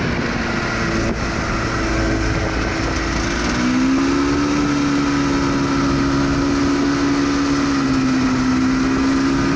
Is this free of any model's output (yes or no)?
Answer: yes